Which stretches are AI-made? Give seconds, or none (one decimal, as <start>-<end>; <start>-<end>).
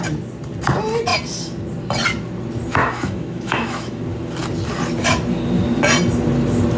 2.8-4.0